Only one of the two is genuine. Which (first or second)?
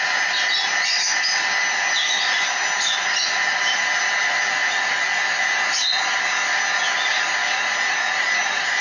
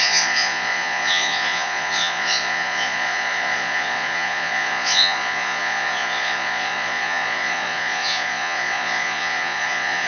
first